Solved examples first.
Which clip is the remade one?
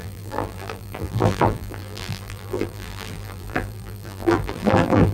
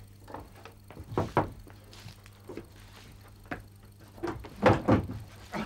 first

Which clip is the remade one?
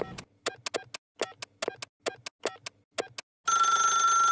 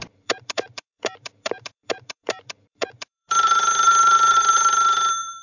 second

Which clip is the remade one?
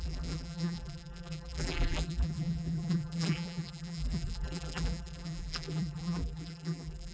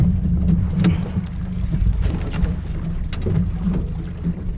first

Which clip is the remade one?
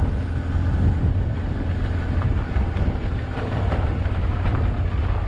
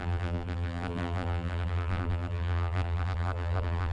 second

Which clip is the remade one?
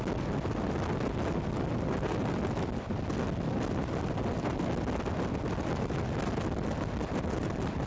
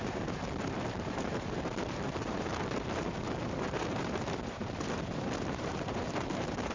second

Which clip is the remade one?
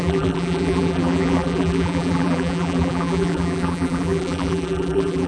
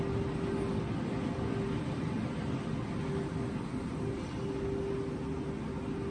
first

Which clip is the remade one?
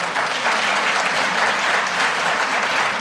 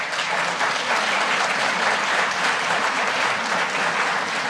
second